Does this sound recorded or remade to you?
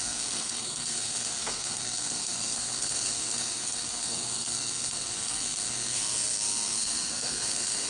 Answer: remade